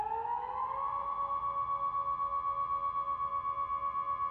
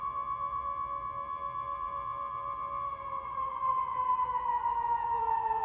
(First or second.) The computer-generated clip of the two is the second